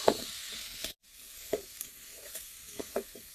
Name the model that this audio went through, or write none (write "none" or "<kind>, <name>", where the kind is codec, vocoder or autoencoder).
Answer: codec, SNAC